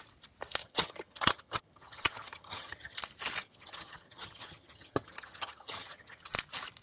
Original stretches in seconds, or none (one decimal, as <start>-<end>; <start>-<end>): 0.0-0.6; 3.0-3.4; 6.3-6.8